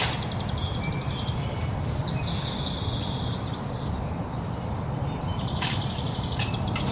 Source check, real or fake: real